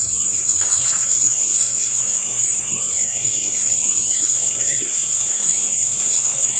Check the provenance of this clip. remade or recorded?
remade